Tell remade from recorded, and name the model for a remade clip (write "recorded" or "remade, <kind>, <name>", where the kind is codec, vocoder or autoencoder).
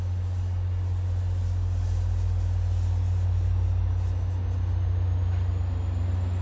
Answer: recorded